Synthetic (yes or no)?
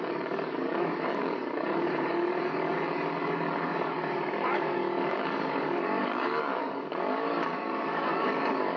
yes